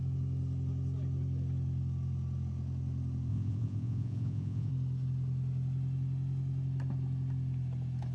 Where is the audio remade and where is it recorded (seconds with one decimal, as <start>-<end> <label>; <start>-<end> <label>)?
0.0-3.3 recorded; 3.3-4.7 remade; 4.7-8.1 recorded